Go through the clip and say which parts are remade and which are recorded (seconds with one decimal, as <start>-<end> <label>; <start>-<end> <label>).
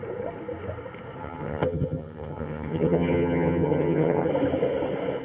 0.0-1.2 recorded; 1.2-4.3 remade; 4.3-5.2 recorded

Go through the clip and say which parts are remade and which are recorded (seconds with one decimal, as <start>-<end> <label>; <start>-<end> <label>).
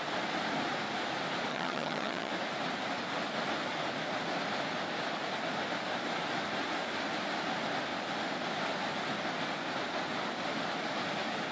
0.0-1.5 recorded; 1.5-2.3 remade; 2.3-11.5 recorded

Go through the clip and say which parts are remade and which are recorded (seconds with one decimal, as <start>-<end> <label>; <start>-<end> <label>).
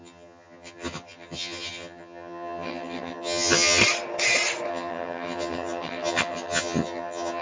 0.0-3.8 remade; 3.8-4.7 recorded; 4.7-7.4 remade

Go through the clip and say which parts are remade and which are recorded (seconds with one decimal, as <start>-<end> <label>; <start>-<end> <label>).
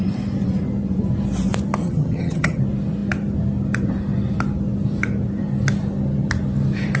0.0-1.8 recorded; 1.8-2.6 remade; 2.6-7.0 recorded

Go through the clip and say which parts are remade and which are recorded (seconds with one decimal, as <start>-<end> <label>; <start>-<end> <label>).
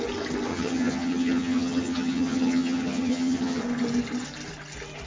0.0-0.5 recorded; 0.5-3.6 remade; 3.6-5.1 recorded